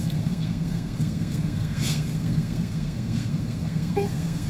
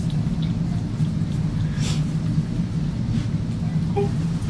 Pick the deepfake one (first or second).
first